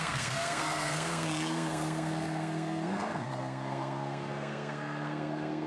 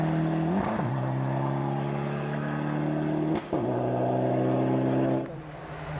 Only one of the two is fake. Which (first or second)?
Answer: first